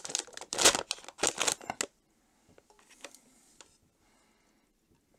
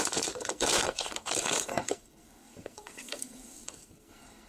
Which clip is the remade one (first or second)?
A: second